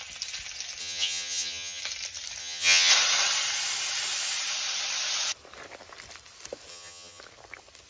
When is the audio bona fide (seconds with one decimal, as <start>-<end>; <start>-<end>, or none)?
0.0-0.8; 1.8-2.4; 2.9-6.7; 7.2-7.9